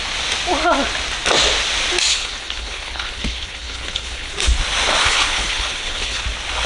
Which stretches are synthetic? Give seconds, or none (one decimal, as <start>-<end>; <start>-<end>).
2.1-4.3; 5.0-6.2